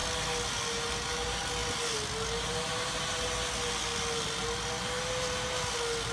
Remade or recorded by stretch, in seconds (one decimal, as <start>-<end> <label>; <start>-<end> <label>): 0.0-6.1 recorded